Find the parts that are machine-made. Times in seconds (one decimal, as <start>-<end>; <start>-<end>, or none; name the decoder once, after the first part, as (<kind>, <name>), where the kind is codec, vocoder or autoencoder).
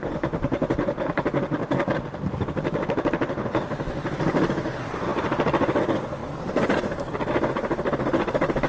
none